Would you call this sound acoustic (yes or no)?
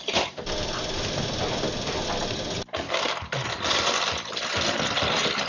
yes